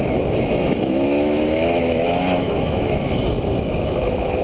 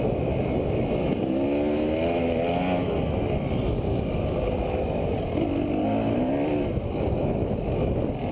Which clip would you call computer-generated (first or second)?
first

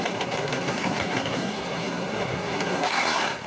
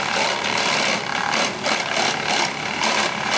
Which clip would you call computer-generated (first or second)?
first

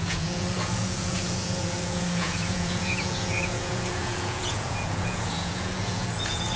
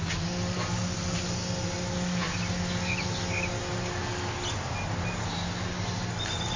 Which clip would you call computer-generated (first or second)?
first